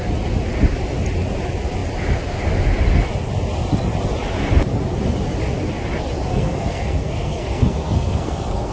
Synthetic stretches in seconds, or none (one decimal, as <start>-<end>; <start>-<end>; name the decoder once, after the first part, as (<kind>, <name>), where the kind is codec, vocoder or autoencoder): 6.3-8.7 (codec, SNAC)